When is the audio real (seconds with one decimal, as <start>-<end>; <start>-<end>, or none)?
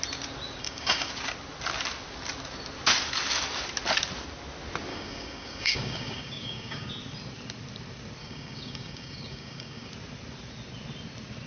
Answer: 0.0-0.6; 1.1-4.9; 6.9-8.2; 9.9-11.5